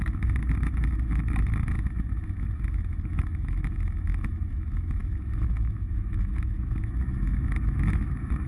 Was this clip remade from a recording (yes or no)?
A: yes